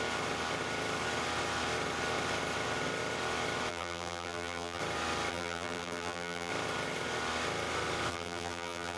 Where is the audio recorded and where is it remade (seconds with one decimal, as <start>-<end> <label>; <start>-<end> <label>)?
0.0-3.7 recorded; 3.7-4.8 remade; 4.8-5.3 recorded; 5.3-6.5 remade; 6.5-8.1 recorded; 8.1-9.0 remade